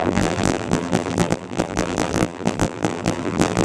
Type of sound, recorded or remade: remade